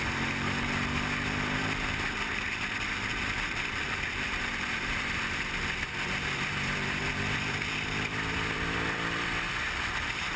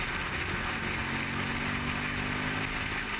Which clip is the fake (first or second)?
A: first